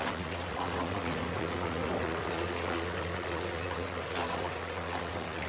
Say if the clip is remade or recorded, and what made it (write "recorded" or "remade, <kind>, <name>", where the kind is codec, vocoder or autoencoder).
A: remade, vocoder, WaveNeXt